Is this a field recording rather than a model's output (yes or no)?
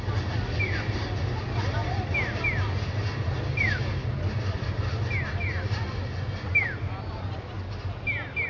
yes